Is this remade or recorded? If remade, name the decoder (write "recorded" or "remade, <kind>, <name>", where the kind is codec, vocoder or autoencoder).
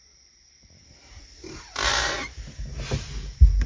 recorded